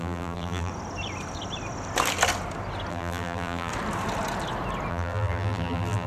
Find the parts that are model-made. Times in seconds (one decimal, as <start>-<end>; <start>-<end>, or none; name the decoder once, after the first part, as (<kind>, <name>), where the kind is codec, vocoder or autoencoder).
0.0-0.7 (vocoder, BigVGAN v2); 2.9-3.7; 4.9-6.1